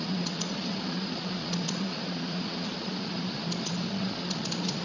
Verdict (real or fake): fake